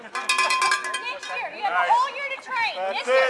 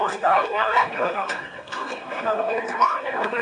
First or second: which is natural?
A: first